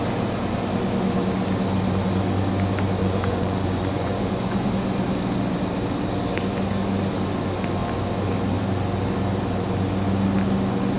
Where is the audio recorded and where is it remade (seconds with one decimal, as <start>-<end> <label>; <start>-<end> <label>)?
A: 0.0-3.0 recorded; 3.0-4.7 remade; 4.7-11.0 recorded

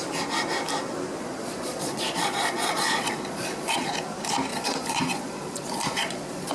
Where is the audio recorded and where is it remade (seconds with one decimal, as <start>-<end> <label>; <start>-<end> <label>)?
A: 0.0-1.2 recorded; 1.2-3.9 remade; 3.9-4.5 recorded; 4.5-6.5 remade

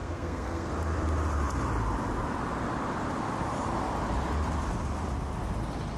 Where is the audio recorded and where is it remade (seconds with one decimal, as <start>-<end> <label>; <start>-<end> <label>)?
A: 0.0-0.7 remade; 0.7-6.0 recorded

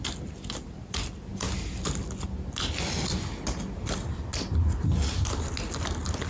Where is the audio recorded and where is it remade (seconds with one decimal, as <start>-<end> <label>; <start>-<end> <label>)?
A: 0.0-6.3 recorded

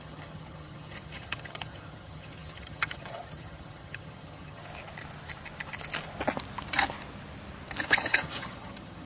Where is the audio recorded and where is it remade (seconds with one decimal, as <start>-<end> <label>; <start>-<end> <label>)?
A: 0.0-4.6 remade; 4.6-7.8 recorded; 7.8-9.1 remade

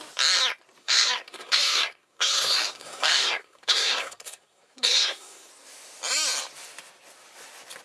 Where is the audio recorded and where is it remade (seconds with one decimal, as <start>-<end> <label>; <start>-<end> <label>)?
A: 0.0-0.8 recorded; 0.8-5.5 remade; 5.5-7.8 recorded